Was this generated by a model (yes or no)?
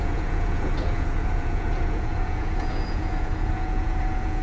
yes